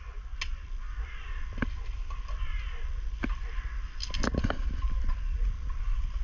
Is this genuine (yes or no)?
yes